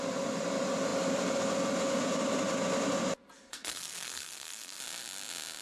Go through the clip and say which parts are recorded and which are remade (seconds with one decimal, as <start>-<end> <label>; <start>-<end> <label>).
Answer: 0.0-3.5 recorded; 3.5-4.8 remade; 4.8-5.6 recorded